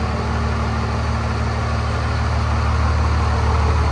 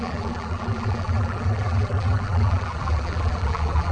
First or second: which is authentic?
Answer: first